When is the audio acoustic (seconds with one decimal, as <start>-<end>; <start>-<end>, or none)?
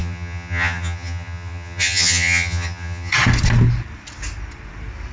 3.1-5.1